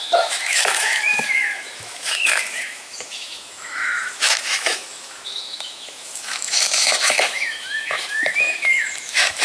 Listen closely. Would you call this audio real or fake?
fake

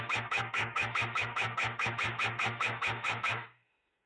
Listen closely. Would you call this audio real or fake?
fake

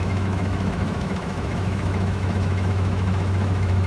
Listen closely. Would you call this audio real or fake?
fake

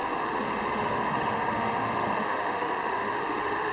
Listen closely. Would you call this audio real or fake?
fake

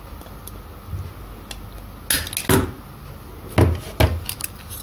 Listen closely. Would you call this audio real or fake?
real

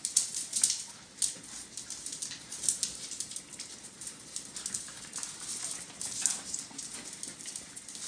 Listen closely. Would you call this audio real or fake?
real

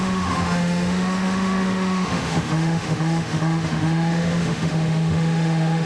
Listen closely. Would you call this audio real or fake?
fake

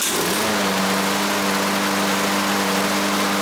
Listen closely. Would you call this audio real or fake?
real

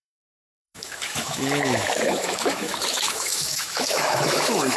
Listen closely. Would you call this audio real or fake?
fake